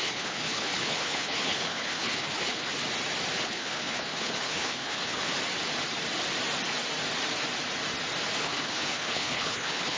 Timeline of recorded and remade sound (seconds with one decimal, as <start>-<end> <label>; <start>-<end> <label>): 0.0-2.7 remade; 2.7-3.4 recorded; 3.4-5.3 remade; 5.3-8.4 recorded; 8.4-10.0 remade